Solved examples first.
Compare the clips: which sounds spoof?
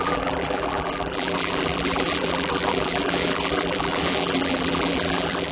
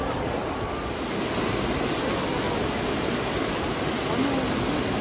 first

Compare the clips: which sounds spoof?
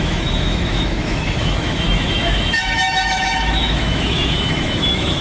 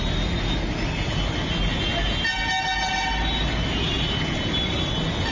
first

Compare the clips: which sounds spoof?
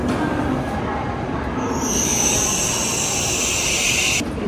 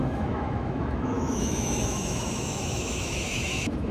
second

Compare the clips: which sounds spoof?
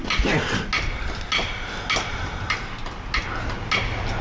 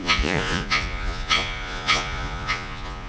second